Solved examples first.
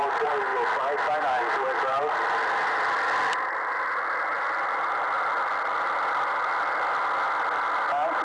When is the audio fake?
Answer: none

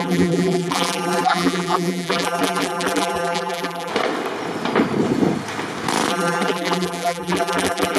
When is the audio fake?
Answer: 0.0-3.9 (vocoder, BigVGAN v2); 6.1-8.0

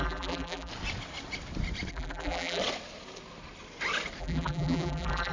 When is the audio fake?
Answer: 0.0-0.7 (vocoder, BigVGAN v2); 1.9-2.6; 4.2-5.3

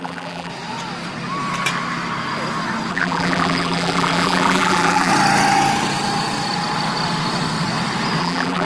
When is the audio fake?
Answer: 0.0-0.5 (vocoder, BigVGAN v2); 2.9-5.1; 8.2-8.6